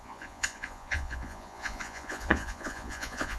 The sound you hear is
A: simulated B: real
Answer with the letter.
A